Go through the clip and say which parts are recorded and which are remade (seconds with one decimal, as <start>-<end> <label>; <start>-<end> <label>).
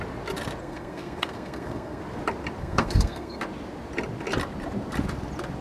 0.0-0.6 recorded; 0.6-2.0 remade; 2.0-2.6 recorded; 2.6-3.4 remade; 3.4-5.6 recorded